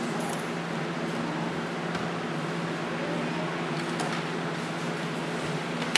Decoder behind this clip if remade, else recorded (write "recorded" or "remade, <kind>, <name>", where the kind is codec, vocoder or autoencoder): recorded